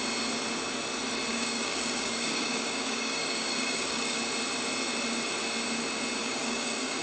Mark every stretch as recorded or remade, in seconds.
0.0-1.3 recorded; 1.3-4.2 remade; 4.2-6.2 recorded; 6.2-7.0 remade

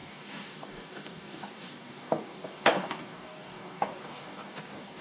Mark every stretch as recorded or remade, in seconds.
0.0-5.0 remade

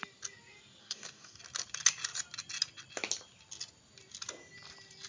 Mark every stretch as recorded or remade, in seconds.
0.0-0.8 recorded; 0.8-1.4 remade; 1.4-5.1 recorded